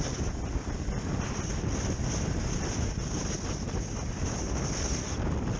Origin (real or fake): real